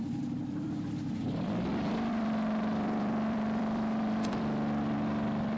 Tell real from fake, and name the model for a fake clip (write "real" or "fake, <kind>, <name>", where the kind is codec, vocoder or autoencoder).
fake, vocoder, BigVGAN v2